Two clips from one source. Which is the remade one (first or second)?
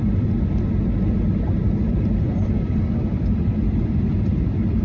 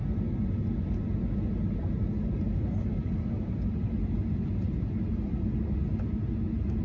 first